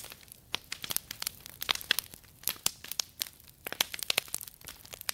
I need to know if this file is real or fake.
real